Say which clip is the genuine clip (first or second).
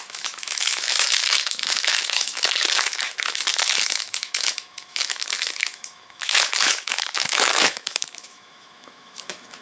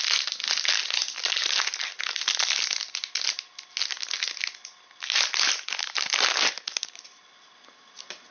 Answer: second